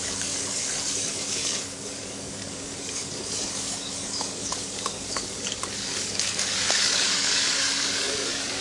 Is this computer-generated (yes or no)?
yes